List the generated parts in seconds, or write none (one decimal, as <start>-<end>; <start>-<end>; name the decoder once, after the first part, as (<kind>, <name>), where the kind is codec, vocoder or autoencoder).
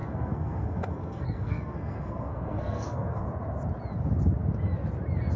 0.0-3.2 (codec, SNAC)